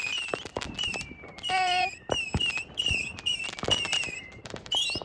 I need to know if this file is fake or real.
fake